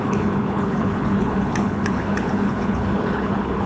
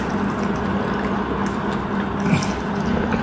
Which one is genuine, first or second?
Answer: second